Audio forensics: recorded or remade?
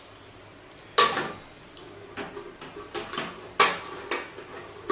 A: recorded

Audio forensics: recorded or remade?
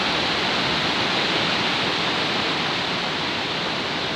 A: recorded